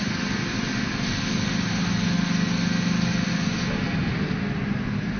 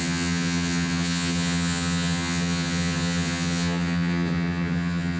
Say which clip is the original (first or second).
first